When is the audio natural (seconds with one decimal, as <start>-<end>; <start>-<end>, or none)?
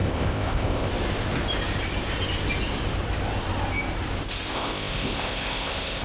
0.9-4.5